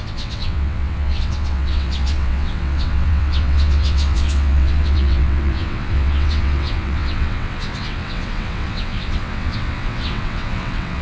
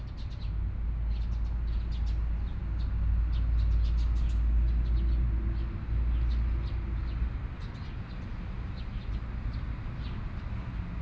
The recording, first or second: second